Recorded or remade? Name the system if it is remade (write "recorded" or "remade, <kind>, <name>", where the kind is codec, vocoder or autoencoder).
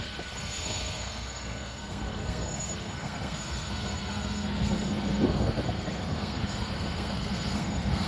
remade, codec, SNAC